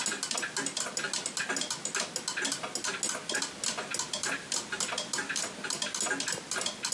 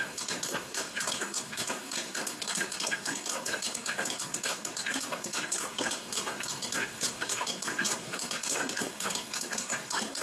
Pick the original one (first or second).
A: first